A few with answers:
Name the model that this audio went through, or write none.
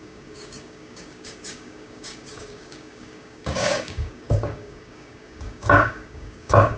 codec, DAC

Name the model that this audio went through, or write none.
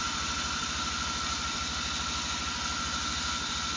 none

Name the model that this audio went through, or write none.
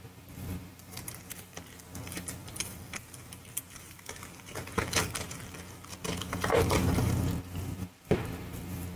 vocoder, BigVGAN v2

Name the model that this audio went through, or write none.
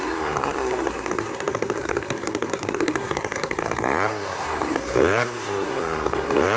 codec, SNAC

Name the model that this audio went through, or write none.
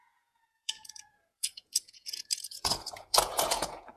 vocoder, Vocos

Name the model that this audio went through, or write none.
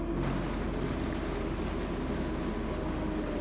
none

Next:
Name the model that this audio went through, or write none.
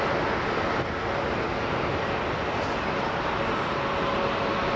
none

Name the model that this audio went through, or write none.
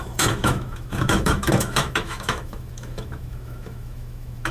autoencoder, DAC-VAE